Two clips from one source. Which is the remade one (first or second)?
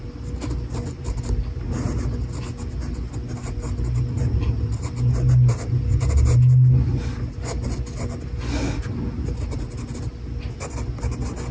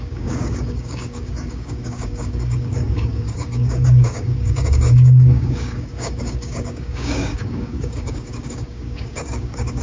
second